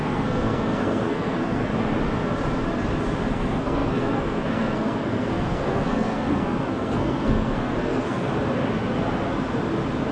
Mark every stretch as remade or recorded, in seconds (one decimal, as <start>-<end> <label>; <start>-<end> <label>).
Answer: 0.0-1.7 remade; 1.7-3.3 recorded; 3.3-8.3 remade; 8.3-10.1 recorded